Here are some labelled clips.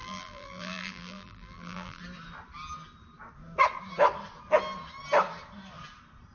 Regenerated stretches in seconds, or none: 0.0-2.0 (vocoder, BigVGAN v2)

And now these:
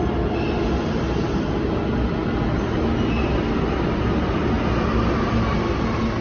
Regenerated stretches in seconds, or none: none

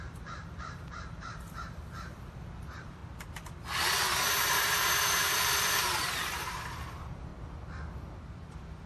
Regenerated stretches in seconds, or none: 0.0-3.0 (vocoder, BigVGAN v2); 4.3-7.3; 8.5-8.9